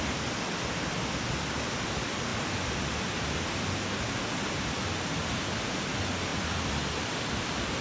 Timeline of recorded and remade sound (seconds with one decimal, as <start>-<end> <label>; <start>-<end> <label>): 0.0-7.8 recorded